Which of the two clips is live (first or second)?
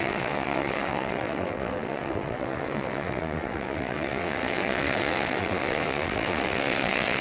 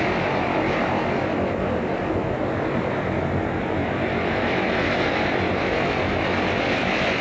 second